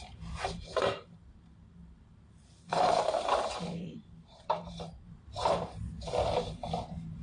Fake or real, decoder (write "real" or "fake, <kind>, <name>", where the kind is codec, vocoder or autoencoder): fake, vocoder, BigVGAN v2